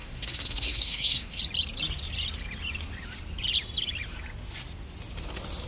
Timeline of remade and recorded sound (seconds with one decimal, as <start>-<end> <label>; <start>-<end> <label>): 0.0-1.4 remade; 1.4-5.7 recorded